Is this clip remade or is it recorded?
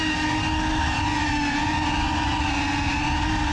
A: recorded